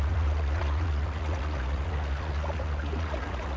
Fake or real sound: fake